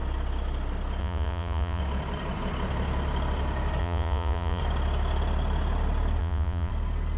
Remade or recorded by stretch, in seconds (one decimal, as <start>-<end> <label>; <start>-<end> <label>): 0.0-1.0 recorded; 1.0-1.8 remade; 1.8-3.8 recorded; 3.8-4.6 remade; 4.6-6.2 recorded; 6.2-6.7 remade; 6.7-7.2 recorded